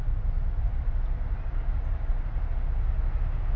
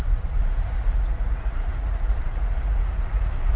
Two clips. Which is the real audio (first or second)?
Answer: first